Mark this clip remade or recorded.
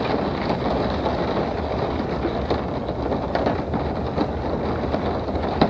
recorded